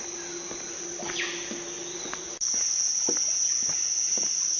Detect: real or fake real